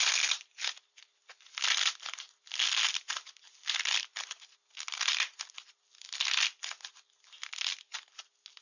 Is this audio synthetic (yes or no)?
no